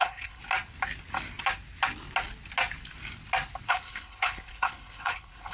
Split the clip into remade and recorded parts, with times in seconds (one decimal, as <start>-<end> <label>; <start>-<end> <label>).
0.0-0.4 remade; 0.4-3.7 recorded; 3.7-5.5 remade